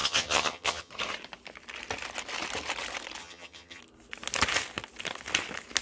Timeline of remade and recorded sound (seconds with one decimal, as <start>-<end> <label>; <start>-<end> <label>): 0.0-0.9 remade; 0.9-3.2 recorded; 3.2-3.8 remade; 3.8-5.8 recorded

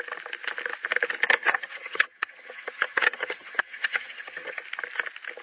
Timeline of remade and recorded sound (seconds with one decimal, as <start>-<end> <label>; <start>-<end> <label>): 0.0-1.4 recorded; 1.4-4.6 remade; 4.6-5.4 recorded

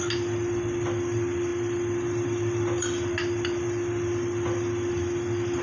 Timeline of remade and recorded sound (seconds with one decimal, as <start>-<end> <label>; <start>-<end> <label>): 0.0-5.6 recorded

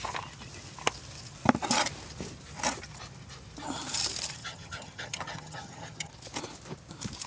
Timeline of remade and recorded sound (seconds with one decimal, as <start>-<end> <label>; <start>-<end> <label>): 0.0-4.4 recorded; 4.4-6.1 remade; 6.1-7.3 recorded

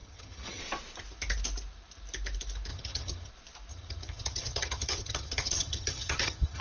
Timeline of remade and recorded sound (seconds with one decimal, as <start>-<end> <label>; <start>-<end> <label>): 0.0-0.6 remade; 0.6-2.7 recorded; 2.7-3.3 remade; 3.3-3.7 recorded; 3.7-6.6 remade

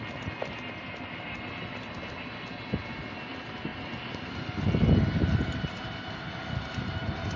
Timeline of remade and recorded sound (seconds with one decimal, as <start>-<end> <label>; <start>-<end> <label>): 0.0-7.4 recorded

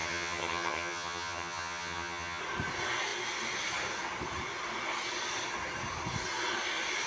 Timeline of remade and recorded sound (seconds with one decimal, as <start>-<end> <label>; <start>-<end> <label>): 0.0-2.4 remade; 2.4-7.1 recorded

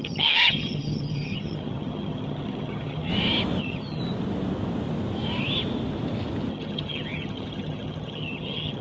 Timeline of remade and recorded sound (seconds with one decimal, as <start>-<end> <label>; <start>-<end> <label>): 0.0-3.1 remade; 3.1-3.6 recorded; 3.6-4.0 remade; 4.0-6.5 recorded; 6.5-8.8 remade